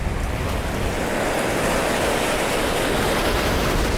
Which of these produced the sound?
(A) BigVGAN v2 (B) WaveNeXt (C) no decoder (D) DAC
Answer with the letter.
C